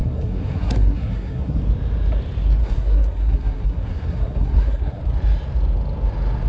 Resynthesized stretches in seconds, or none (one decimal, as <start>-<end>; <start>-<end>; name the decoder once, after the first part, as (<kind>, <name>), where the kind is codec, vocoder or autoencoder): 0.0-1.6 (codec, SNAC); 2.6-5.0